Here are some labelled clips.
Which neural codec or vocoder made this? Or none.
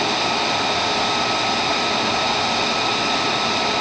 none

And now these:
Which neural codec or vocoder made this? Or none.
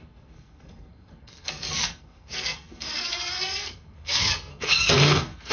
codec, SNAC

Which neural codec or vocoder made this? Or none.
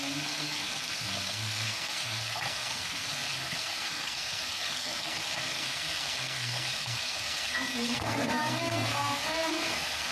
codec, SNAC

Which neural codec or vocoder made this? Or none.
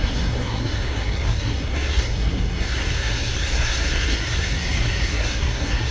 codec, SNAC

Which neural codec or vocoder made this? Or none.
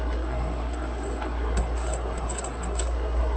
codec, SNAC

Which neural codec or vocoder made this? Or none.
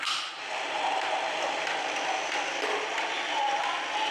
none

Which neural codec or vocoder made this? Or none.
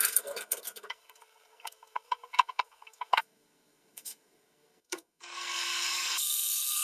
codec, SNAC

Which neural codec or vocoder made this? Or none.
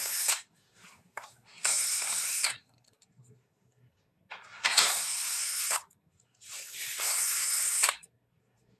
codec, SNAC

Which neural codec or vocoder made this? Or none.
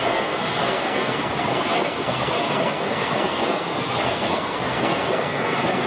codec, SNAC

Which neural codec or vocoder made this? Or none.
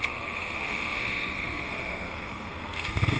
codec, SNAC